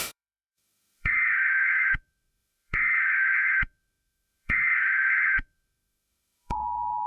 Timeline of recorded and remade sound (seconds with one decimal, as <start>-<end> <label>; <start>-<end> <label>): 0.0-7.1 remade